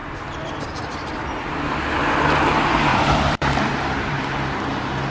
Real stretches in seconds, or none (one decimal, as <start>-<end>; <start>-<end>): 1.5-2.9; 4.2-5.1